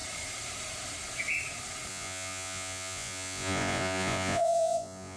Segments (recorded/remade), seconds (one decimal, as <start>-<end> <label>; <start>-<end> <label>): 0.0-1.9 recorded; 1.9-5.2 remade